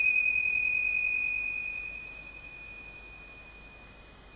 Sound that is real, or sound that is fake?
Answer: fake